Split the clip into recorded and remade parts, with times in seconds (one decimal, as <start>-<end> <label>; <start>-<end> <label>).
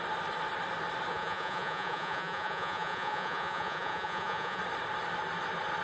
0.0-1.1 recorded; 1.1-4.6 remade; 4.6-5.8 recorded